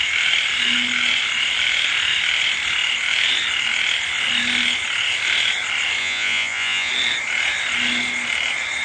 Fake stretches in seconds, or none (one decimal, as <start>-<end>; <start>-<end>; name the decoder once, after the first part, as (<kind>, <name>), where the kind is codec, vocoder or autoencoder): 6.0-6.9 (vocoder, Vocos)